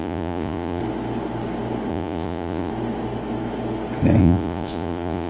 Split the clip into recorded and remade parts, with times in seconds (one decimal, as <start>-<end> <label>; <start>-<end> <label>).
0.0-0.8 remade; 0.8-1.9 recorded; 1.9-2.7 remade; 2.7-4.2 recorded; 4.2-5.3 remade